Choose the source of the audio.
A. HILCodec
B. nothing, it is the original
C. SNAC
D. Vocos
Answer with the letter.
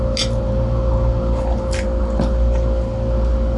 B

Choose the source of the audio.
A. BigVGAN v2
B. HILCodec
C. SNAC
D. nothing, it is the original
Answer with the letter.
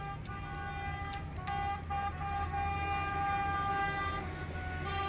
D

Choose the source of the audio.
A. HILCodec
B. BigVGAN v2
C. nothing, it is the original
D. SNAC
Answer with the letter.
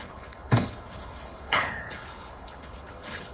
A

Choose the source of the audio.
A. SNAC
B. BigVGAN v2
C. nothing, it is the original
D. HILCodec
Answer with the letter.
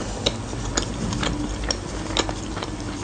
C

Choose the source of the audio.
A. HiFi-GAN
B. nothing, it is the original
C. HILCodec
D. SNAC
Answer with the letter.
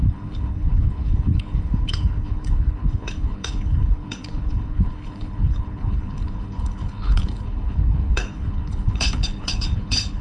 C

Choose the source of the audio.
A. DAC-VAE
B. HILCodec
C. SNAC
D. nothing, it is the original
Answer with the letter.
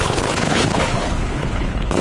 B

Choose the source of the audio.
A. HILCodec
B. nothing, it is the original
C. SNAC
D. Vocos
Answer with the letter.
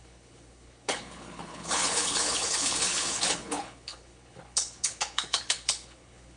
A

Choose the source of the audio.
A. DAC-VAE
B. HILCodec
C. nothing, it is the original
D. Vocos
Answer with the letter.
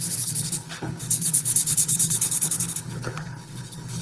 B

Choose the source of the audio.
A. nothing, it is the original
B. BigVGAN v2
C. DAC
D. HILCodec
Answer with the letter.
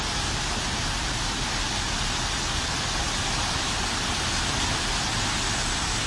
A